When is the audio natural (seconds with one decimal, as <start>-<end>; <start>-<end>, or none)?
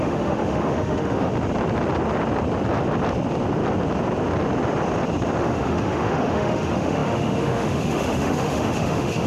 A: 1.3-5.4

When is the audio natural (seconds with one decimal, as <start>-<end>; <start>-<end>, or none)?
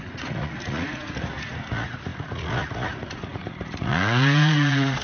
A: none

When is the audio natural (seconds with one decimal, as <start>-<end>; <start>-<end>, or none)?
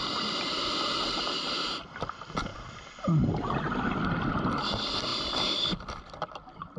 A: 0.0-2.5; 3.3-5.1; 6.0-6.8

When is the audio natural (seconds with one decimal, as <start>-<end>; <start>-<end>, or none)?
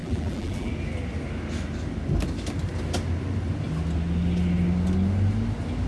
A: 0.7-5.9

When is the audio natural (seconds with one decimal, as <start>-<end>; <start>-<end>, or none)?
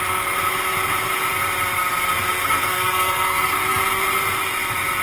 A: 0.0-2.3; 3.8-5.0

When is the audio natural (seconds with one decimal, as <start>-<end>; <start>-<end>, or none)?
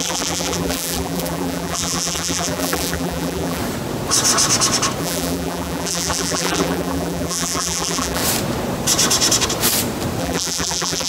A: 3.6-5.0; 8.2-10.2